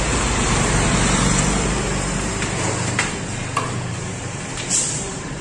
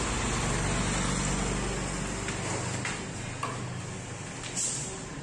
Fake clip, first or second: first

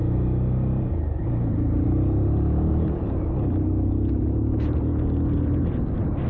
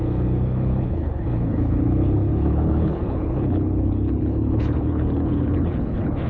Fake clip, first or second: second